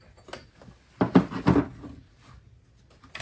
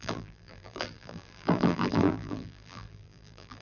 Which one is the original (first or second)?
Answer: first